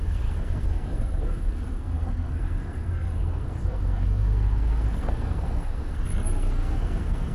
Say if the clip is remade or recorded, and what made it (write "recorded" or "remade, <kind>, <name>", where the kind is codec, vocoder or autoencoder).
remade, codec, SNAC